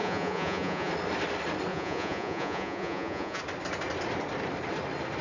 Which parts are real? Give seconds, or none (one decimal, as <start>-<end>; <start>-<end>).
0.9-1.7; 3.4-5.2